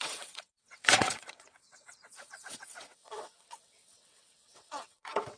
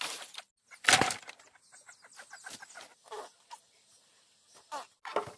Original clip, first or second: second